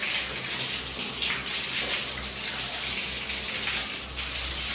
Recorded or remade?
recorded